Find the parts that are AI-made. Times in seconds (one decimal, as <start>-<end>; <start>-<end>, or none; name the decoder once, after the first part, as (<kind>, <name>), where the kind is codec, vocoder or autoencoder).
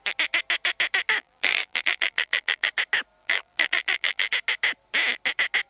1.2-2.7 (vocoder, BigVGAN v2); 3.2-4.3